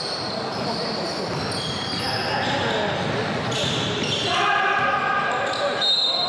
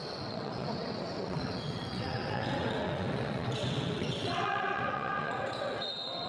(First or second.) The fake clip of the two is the second